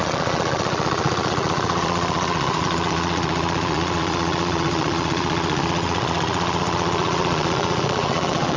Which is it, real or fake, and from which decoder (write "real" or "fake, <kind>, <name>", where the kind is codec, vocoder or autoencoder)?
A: fake, vocoder, Vocos